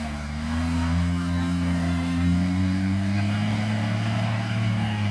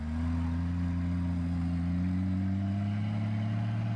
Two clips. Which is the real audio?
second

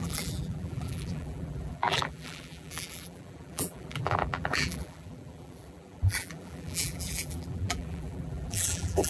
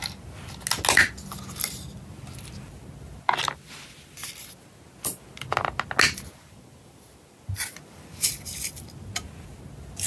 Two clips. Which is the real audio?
second